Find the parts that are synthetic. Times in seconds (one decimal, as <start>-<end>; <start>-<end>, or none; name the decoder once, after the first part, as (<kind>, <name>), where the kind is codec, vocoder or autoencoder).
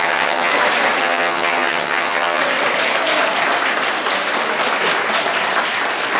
0.0-0.5 (vocoder, HiFi-GAN); 1.0-2.4